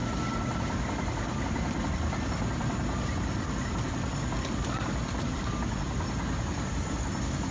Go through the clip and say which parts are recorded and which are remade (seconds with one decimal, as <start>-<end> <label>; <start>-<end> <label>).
0.0-7.5 recorded